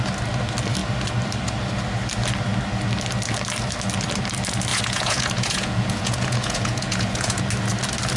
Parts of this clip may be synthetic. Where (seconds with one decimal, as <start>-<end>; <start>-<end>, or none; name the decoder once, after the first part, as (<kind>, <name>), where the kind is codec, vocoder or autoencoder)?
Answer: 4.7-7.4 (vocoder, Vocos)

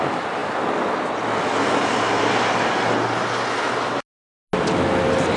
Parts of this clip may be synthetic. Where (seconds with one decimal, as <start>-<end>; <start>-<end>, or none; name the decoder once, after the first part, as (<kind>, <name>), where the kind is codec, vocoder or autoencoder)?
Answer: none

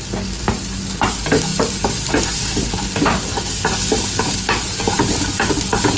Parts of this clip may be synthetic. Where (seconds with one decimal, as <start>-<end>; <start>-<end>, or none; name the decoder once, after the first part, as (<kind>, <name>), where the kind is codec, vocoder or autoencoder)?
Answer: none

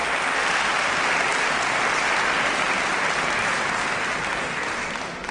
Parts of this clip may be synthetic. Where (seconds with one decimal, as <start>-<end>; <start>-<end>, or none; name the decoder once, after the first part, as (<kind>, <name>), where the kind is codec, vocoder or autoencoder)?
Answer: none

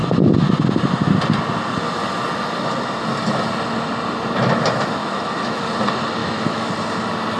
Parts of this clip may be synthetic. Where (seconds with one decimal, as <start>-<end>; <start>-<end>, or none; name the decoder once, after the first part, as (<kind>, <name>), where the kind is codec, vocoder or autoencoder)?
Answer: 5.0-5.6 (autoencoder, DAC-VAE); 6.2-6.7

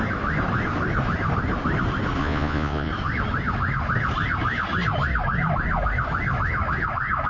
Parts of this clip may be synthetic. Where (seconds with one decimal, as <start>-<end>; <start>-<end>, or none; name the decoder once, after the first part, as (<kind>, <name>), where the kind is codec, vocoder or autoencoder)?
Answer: 2.2-2.9 (vocoder, Vocos)